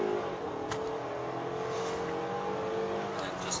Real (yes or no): yes